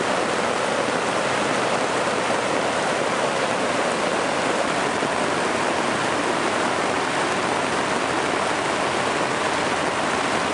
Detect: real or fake real